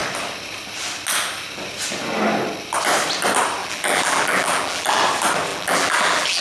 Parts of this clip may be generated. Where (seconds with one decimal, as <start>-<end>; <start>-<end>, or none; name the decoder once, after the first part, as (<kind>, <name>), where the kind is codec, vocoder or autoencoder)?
3.6-5.0 (vocoder, BigVGAN v2); 5.5-6.4